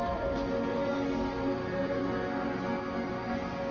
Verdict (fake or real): real